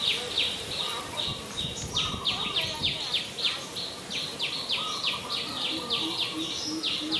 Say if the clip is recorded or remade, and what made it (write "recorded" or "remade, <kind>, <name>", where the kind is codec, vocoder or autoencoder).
recorded